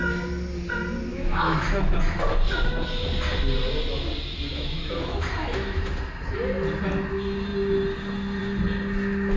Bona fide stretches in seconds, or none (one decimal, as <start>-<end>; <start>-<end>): 0.0-1.1; 1.9-4.5; 5.9-9.4